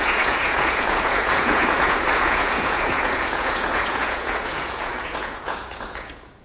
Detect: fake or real fake